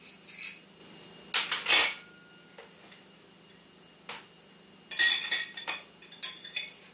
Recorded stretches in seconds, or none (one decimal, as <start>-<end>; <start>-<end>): 0.0-6.9

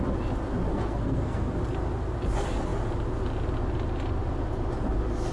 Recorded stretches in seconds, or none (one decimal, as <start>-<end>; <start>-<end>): 0.0-0.7; 1.6-5.3

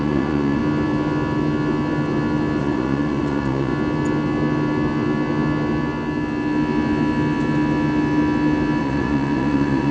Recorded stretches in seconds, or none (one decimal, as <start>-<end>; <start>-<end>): 0.6-2.6; 3.7-8.8

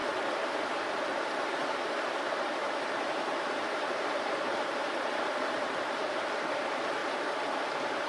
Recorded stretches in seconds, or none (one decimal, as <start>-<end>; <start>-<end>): 0.0-0.9

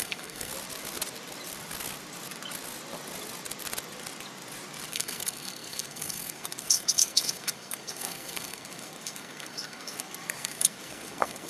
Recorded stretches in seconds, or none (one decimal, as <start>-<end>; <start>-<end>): 0.5-4.9

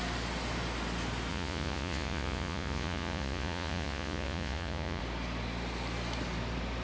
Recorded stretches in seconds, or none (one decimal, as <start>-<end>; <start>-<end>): 0.0-1.3; 5.0-6.8

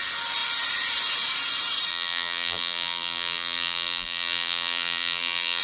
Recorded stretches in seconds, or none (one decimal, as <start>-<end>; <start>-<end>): 0.0-1.9

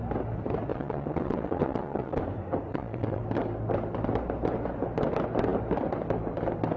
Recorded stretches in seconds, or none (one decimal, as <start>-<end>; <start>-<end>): 0.0-0.7; 2.2-2.7; 3.2-6.8